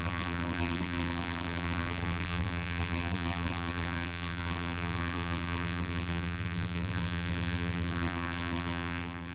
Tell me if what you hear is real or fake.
fake